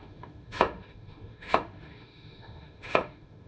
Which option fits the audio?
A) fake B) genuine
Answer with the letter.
A